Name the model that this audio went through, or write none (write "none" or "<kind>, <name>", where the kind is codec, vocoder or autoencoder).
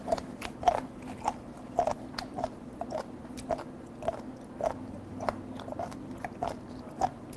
none